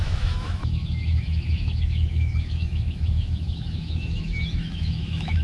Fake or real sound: fake